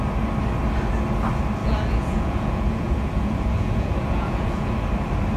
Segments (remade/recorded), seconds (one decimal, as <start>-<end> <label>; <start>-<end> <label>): 0.0-1.6 recorded; 1.6-4.7 remade; 4.7-5.4 recorded